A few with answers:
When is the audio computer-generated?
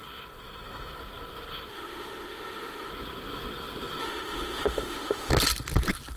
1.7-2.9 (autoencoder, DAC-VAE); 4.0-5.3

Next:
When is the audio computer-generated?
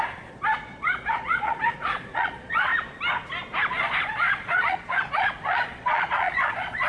0.0-2.7 (vocoder, Vocos); 3.7-6.9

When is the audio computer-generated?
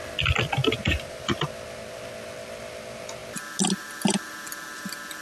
0.6-1.5 (vocoder, BigVGAN v2)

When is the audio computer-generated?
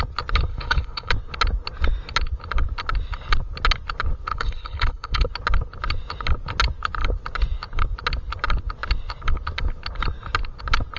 0.5-1.1 (codec, HILCodec); 4.3-5.3